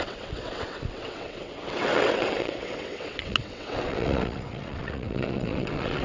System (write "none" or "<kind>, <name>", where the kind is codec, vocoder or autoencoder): vocoder, WaveNeXt